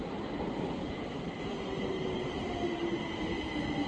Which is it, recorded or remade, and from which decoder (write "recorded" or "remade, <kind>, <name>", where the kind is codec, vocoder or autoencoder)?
recorded